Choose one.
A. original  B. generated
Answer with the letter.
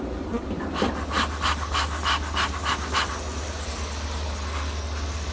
A